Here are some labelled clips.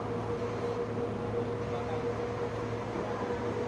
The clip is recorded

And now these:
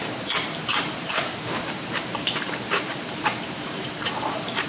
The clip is remade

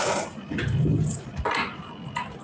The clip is recorded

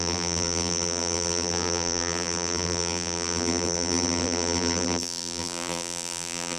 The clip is remade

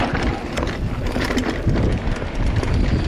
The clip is recorded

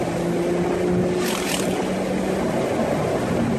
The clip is recorded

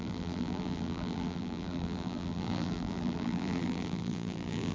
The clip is remade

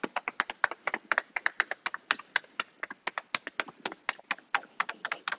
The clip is recorded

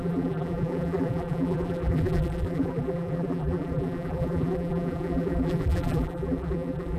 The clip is remade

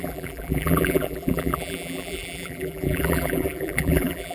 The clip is remade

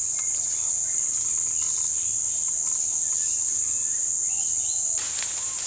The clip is recorded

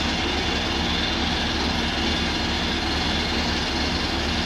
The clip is recorded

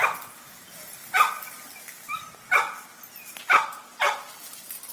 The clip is recorded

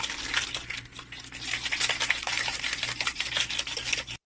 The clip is recorded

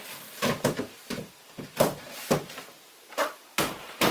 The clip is remade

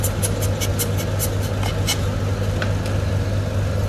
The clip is recorded